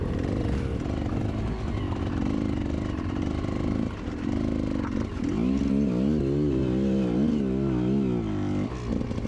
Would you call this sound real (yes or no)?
yes